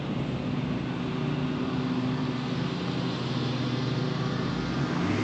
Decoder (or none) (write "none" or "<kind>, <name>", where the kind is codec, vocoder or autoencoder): none